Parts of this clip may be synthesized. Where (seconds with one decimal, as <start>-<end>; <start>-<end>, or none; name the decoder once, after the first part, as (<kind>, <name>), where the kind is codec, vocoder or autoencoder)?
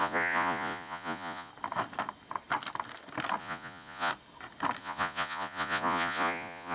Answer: 0.0-1.5 (vocoder, Vocos); 3.4-4.1; 4.8-6.7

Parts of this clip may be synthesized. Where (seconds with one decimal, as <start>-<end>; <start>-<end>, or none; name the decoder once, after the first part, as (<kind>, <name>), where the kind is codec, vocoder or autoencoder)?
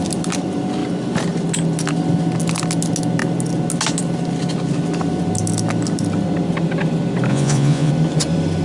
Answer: 7.3-7.9 (vocoder, Vocos)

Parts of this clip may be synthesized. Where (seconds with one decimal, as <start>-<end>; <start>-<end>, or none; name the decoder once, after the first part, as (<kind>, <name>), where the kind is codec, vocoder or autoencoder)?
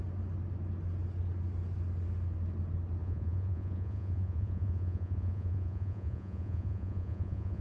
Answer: 3.0-7.6 (vocoder, Vocos)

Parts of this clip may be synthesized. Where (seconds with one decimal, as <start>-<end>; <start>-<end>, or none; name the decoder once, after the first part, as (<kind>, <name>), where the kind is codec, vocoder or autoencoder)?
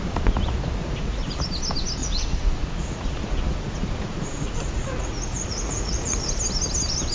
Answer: 0.8-1.4 (vocoder, Vocos); 2.0-6.3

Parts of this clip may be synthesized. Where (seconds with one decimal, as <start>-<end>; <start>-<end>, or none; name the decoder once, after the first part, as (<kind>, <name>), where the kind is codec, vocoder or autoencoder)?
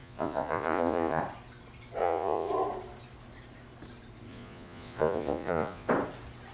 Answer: 0.0-1.2 (vocoder, Vocos); 2.0-2.5; 4.3-5.9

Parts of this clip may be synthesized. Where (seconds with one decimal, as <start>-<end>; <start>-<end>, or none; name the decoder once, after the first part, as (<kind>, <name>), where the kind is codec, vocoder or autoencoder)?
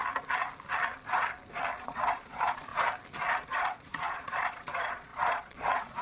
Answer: 1.8-2.7 (vocoder, Vocos); 3.5-6.0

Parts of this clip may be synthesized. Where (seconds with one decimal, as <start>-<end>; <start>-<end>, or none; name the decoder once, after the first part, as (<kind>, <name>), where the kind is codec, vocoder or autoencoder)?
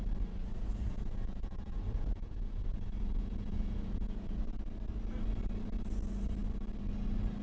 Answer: 0.4-4.4 (vocoder, Vocos)